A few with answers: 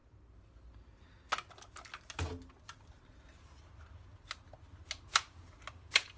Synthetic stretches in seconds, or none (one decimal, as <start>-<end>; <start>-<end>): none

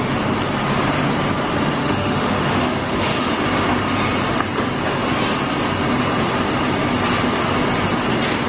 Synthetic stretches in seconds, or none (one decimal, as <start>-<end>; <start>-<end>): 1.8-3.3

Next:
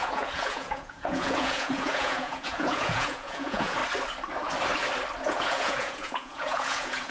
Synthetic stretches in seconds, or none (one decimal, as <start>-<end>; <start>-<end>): 0.0-3.8; 5.2-7.1

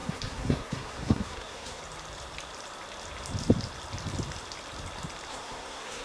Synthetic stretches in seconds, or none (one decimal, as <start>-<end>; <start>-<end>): 0.0-1.8; 5.3-6.0

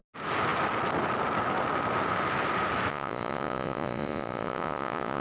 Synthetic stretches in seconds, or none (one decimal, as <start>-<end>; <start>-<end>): 2.9-5.2

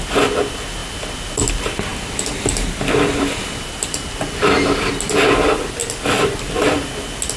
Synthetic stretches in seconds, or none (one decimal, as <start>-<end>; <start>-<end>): 1.9-4.9; 5.8-7.0

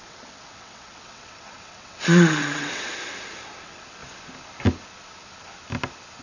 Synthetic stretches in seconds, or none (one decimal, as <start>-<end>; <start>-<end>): 0.0-2.9; 3.6-4.0

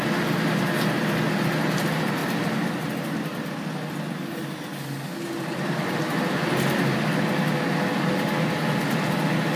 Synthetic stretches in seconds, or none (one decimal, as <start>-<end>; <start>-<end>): none